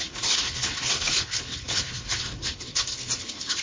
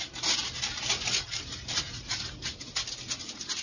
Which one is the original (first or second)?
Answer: second